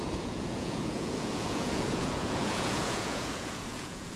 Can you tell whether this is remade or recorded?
remade